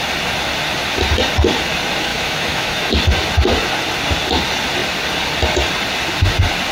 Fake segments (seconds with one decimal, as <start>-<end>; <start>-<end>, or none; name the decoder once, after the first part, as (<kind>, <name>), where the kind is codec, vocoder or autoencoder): 2.1-2.9 (autoencoder, DAC-VAE)